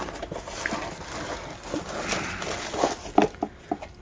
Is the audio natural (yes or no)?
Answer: yes